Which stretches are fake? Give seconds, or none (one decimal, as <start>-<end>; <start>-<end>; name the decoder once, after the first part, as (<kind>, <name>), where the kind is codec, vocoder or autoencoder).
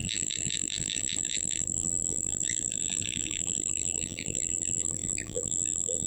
0.0-6.1 (vocoder, BigVGAN v2)